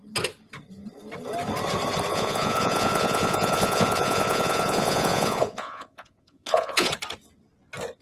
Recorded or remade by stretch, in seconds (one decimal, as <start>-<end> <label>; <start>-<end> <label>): 0.0-2.1 recorded; 2.1-6.9 remade; 6.9-8.0 recorded